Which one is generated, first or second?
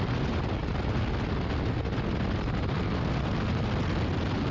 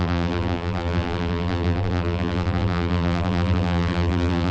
second